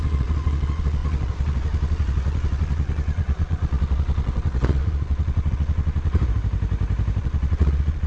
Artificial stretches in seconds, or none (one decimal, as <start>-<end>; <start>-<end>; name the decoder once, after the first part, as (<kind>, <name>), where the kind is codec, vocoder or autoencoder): 0.0-6.2 (vocoder, Vocos); 7.2-8.1